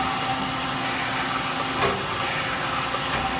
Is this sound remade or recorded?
recorded